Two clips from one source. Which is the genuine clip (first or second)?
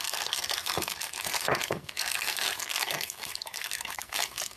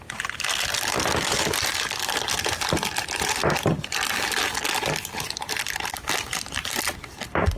second